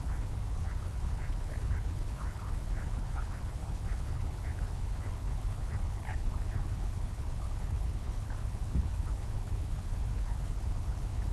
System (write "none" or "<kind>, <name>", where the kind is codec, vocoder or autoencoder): codec, HILCodec